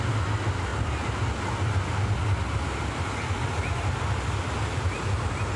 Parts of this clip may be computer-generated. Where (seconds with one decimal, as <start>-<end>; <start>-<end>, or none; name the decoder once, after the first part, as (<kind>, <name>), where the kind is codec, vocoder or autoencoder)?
0.7-1.2 (vocoder, BigVGAN v2)